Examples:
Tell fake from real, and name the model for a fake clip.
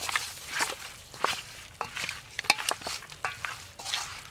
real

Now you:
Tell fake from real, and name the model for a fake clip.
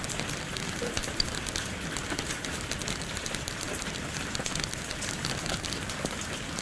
real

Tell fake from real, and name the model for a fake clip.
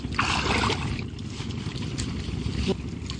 real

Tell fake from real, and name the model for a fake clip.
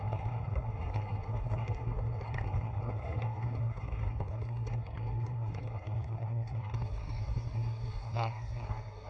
fake, codec, SNAC